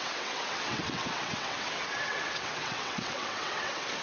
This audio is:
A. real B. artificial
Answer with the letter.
B